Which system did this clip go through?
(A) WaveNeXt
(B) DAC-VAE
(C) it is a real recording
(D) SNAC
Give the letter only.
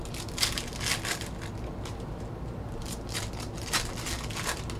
C